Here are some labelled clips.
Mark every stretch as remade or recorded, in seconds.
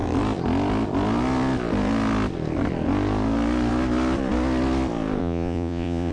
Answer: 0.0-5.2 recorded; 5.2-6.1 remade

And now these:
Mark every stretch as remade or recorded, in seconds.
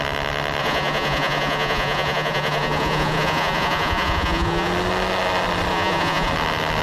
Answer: 0.0-0.6 recorded; 0.6-4.7 remade; 4.7-5.7 recorded; 5.7-6.3 remade; 6.3-6.8 recorded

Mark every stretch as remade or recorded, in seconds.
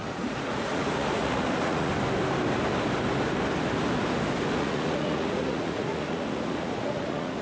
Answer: 0.0-1.9 remade; 1.9-4.6 recorded; 4.6-7.4 remade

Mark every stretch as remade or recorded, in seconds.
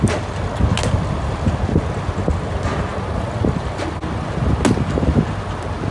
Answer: 0.0-5.9 recorded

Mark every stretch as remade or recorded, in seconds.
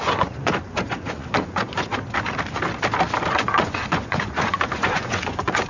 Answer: 0.0-1.9 remade; 1.9-3.3 recorded; 3.3-5.7 remade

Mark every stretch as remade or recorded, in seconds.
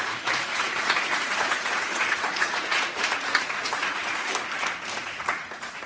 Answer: 0.0-4.3 remade; 4.3-5.0 recorded; 5.0-5.9 remade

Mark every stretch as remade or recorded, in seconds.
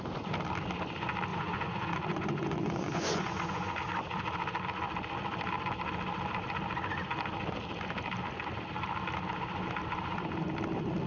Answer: 0.0-1.3 recorded; 1.3-3.8 remade; 3.8-11.1 recorded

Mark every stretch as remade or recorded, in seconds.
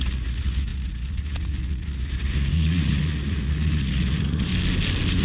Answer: 0.0-4.5 remade; 4.5-5.2 recorded